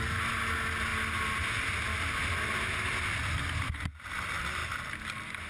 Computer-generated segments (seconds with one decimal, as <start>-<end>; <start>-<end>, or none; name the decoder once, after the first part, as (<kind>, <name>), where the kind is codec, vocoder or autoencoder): none

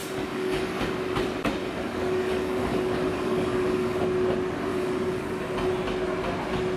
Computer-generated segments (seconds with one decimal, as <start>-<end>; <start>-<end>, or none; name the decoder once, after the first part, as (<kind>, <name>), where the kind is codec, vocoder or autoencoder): 0.0-0.8 (codec, DAC); 1.6-4.0; 4.7-5.4

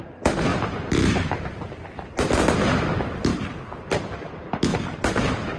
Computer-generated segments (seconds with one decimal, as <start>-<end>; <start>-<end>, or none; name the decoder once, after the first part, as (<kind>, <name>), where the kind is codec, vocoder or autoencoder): 0.5-2.4 (vocoder, BigVGAN v2); 4.7-5.6

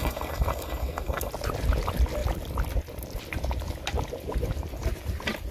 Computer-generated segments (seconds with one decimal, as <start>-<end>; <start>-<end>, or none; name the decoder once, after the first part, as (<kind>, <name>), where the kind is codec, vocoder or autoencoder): 0.0-1.3 (codec, SNAC)

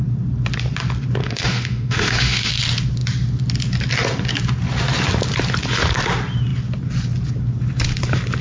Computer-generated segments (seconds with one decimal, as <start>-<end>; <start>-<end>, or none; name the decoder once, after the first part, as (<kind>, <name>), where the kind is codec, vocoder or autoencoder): 1.2-2.5 (autoencoder, DAC-VAE)

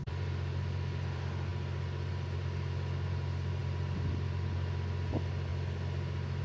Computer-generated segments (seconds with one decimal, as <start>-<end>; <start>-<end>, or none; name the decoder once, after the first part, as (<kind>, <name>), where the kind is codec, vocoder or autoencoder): 0.0-5.5 (vocoder, BigVGAN v2)

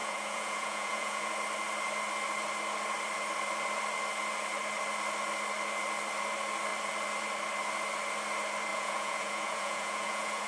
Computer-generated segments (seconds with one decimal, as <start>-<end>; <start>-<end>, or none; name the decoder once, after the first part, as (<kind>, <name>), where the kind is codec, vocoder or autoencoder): 0.0-1.3 (vocoder, Vocos); 8.7-10.5

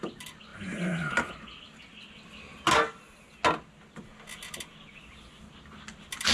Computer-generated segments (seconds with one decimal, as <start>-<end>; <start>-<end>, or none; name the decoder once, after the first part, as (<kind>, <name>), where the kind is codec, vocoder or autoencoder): none